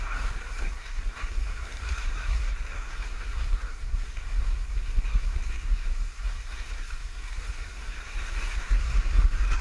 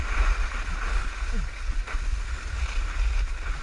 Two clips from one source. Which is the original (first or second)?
second